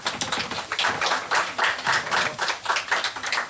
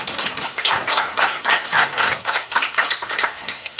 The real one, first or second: first